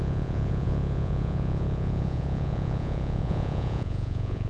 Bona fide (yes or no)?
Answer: no